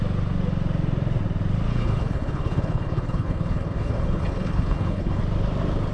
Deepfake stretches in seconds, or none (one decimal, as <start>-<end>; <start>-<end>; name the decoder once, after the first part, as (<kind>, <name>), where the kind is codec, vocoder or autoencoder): 1.7-5.2 (codec, HILCodec)